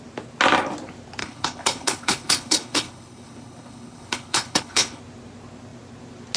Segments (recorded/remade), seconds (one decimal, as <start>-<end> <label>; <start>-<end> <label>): 0.0-1.2 recorded; 1.2-5.0 remade; 5.0-6.4 recorded